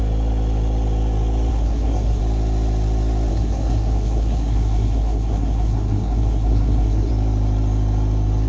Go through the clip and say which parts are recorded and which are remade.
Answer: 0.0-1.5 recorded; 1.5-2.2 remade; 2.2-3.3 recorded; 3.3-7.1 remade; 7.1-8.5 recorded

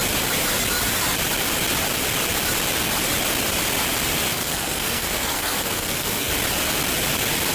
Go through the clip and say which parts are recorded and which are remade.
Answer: 0.0-4.3 recorded; 4.3-6.3 remade; 6.3-7.5 recorded

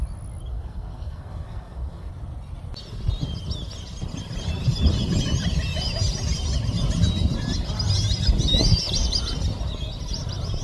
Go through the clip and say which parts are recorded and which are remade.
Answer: 0.0-0.5 recorded; 0.5-2.1 remade; 2.1-10.6 recorded

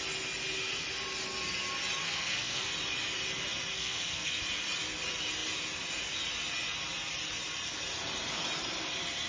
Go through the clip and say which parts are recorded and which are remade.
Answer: 0.0-2.0 recorded; 2.0-2.7 remade; 2.7-3.7 recorded; 3.7-4.4 remade; 4.4-9.3 recorded

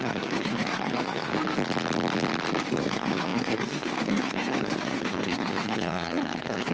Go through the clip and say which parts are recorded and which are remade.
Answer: 0.0-1.3 remade; 1.3-2.7 recorded; 2.7-6.7 remade